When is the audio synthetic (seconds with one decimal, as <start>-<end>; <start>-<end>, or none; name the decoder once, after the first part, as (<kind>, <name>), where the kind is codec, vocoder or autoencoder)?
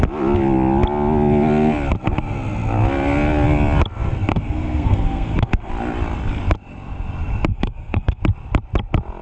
4.3-5.7 (codec, SNAC); 7.5-8.2